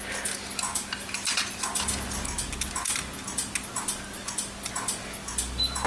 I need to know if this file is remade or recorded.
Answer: recorded